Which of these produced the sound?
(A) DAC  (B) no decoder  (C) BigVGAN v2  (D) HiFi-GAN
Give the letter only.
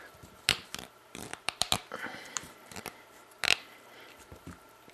C